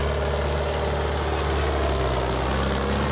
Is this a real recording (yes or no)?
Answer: yes